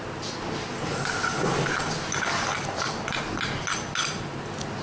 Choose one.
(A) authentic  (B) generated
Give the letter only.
A